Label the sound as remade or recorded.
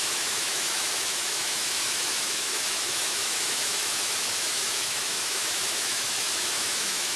remade